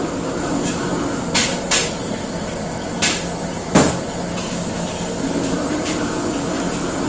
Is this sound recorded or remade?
recorded